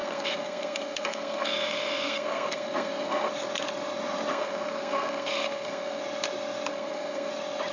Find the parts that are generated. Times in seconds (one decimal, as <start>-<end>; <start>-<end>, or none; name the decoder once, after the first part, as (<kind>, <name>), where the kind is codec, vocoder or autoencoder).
0.0-3.3 (codec, SNAC); 4.3-6.0; 6.7-7.3